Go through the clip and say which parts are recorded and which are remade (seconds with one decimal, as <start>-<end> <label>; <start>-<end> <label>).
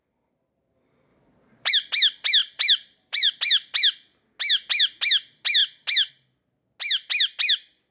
0.0-1.1 recorded; 1.1-1.7 remade; 1.7-2.4 recorded; 2.4-3.3 remade; 3.3-7.9 recorded